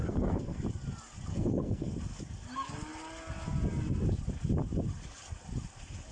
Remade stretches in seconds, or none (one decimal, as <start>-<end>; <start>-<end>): 0.0-0.6; 1.3-1.9